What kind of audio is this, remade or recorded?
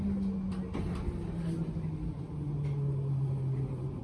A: recorded